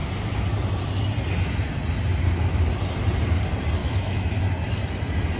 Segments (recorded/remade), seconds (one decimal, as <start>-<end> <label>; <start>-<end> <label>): 0.0-3.8 recorded; 3.8-4.4 remade; 4.4-5.4 recorded